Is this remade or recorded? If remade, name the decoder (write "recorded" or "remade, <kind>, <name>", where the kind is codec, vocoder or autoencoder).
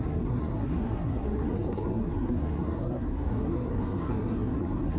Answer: remade, codec, SNAC